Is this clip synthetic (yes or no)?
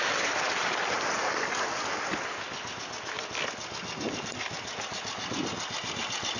no